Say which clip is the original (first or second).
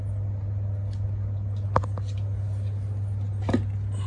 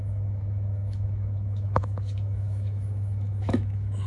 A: first